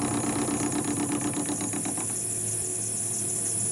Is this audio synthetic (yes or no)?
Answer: no